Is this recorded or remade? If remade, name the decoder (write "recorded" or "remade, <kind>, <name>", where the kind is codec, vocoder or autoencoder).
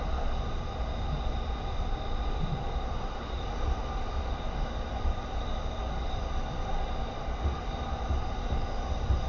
recorded